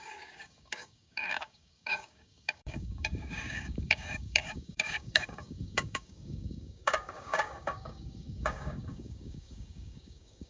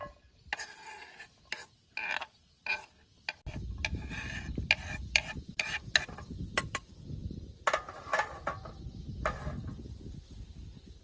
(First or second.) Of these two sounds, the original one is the second